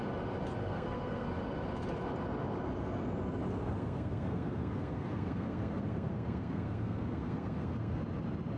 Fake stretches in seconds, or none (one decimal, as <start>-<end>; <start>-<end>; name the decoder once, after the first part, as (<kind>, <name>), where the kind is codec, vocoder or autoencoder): 0.6-1.3 (codec, SNAC); 3.6-8.0